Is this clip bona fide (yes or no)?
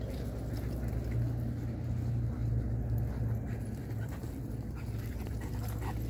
yes